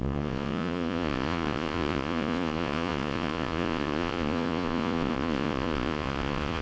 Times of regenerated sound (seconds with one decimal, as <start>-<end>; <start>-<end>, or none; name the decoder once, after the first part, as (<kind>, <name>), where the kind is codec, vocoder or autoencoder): 0.0-6.6 (vocoder, Vocos)